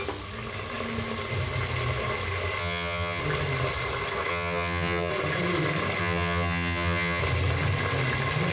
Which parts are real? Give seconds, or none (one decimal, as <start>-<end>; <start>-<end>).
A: 0.0-2.6; 3.2-4.3; 5.1-6.0; 7.2-8.5